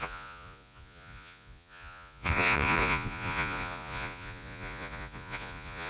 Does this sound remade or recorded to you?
remade